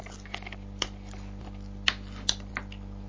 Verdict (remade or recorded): recorded